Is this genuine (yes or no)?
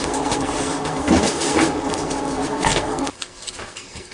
no